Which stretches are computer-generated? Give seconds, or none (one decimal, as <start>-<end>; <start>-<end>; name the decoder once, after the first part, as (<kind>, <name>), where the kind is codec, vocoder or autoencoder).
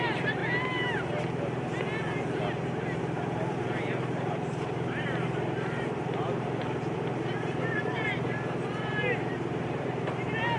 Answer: 0.0-0.4 (vocoder, BigVGAN v2); 3.0-10.6